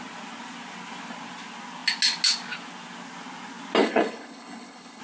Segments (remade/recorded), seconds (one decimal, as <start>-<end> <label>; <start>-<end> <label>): 0.0-3.8 recorded; 3.8-5.0 remade